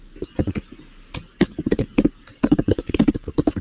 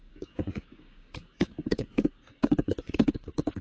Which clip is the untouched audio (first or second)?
first